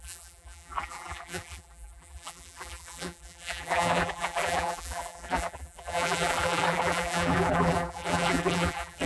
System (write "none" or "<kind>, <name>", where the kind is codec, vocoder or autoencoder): vocoder, BigVGAN v2